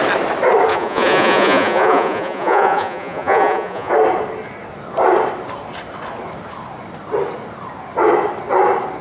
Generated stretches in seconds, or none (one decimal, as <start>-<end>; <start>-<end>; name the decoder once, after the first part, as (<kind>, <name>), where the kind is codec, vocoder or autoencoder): 0.7-3.9 (vocoder, Vocos)